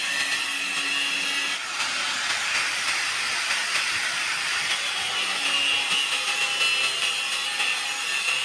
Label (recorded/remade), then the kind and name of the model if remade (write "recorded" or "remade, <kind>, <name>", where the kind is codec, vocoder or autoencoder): recorded